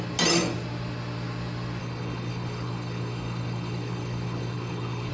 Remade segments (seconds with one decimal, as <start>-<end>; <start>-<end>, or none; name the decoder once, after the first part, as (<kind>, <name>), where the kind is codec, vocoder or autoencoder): 1.8-5.1 (codec, HILCodec)